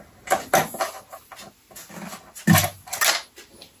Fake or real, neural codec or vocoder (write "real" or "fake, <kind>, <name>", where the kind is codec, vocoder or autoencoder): real